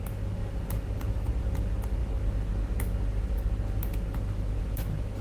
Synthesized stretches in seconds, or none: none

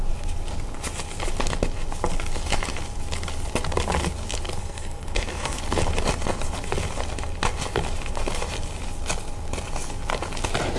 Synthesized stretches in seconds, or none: 4.6-5.6 (codec, SNAC)

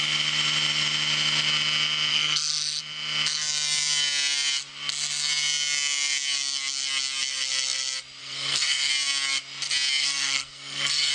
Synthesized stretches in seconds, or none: 2.1-2.8 (codec, SNAC); 8.2-8.9; 10.0-11.1

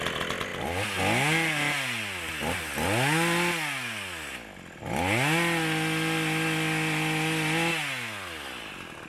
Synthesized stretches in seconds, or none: none

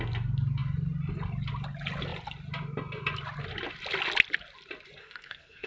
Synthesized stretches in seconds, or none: 5.0-5.7 (codec, SNAC)